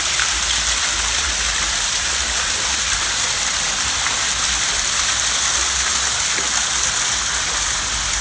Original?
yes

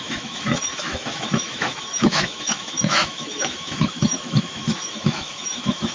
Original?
no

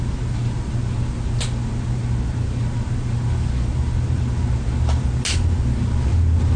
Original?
yes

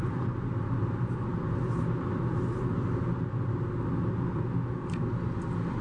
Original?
yes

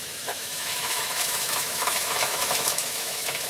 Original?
no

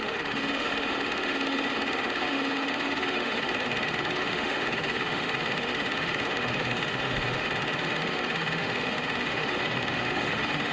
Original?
no